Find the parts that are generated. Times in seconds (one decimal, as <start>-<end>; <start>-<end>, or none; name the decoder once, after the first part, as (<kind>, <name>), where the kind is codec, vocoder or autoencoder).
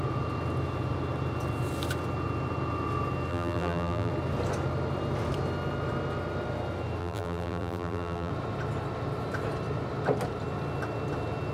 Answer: 3.3-4.1 (vocoder, BigVGAN v2); 7.0-8.3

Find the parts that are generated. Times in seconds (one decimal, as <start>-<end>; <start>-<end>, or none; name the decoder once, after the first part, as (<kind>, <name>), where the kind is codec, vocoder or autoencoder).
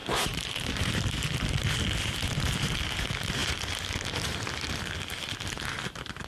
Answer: 0.0-1.0 (vocoder, BigVGAN v2)